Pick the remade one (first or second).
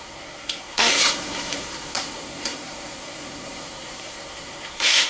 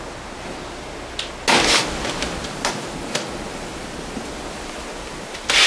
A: first